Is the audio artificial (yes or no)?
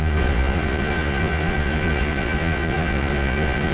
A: yes